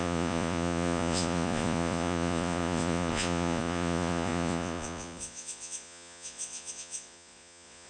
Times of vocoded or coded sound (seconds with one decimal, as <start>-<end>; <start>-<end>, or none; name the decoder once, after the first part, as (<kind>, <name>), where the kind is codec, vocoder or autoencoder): 0.0-7.9 (vocoder, Vocos)